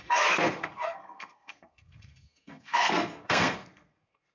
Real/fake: fake